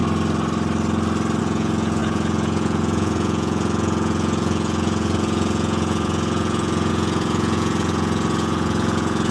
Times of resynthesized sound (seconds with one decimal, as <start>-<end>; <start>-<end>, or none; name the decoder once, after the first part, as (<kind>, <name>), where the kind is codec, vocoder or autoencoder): 1.4-9.3 (vocoder, Vocos)